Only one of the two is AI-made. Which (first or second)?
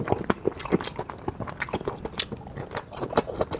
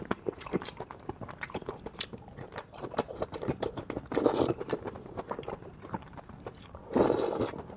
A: second